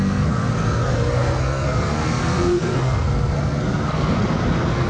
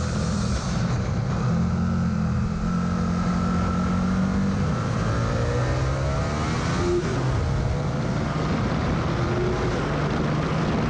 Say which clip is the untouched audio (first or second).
second